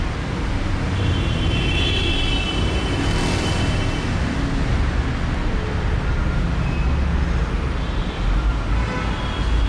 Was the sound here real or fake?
real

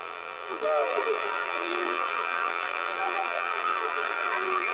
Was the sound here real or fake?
fake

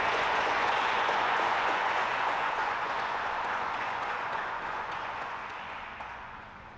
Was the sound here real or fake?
fake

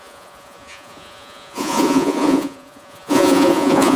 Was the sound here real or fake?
fake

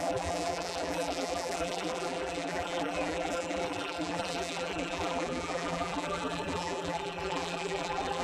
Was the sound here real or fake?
fake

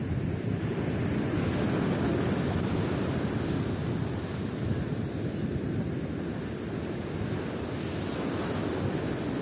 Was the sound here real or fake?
real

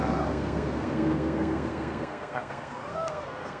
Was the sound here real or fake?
fake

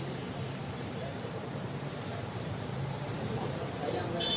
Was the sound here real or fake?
fake